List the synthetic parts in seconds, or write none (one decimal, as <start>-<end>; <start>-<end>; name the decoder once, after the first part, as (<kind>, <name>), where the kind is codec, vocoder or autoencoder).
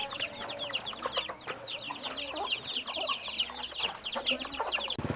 none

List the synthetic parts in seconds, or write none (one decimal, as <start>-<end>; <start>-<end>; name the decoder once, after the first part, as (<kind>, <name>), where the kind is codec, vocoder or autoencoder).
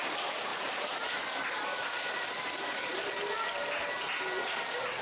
none